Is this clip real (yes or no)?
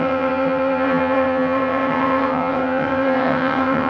no